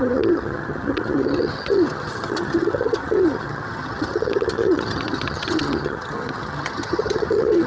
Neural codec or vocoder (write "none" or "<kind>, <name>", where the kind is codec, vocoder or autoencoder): vocoder, HiFi-GAN